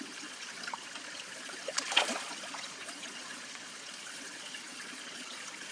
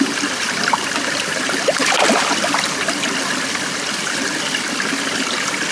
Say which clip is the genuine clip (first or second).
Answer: second